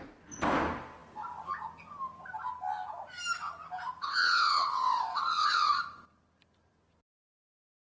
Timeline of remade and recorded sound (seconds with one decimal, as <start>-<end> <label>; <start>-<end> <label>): 0.0-4.0 recorded; 4.0-5.7 remade; 5.7-7.9 recorded